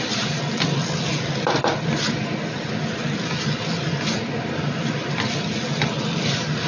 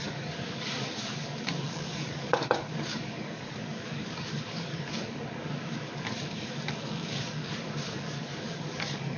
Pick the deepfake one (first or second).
second